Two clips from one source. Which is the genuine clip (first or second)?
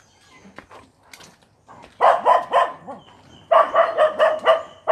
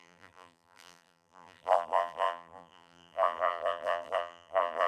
first